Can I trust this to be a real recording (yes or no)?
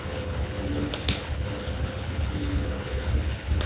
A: no